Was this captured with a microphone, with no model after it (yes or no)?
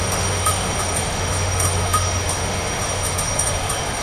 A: no